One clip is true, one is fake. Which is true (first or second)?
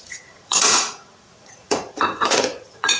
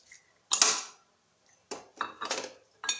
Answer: second